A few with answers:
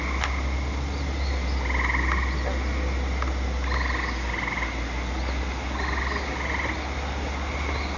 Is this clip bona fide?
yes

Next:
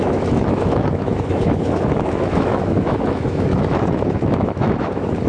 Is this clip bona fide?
no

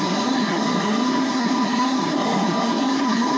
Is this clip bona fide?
no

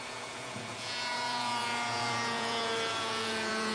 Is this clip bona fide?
no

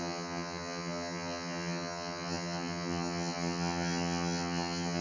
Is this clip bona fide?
no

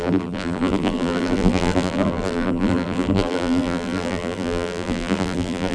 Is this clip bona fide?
no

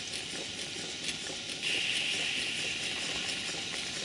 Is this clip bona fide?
yes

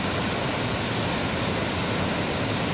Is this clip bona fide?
yes